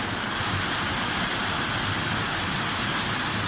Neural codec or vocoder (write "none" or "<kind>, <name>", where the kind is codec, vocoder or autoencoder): none